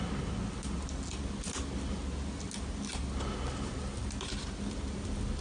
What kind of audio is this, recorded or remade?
recorded